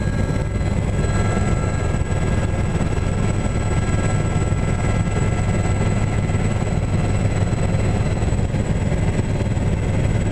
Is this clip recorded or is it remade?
recorded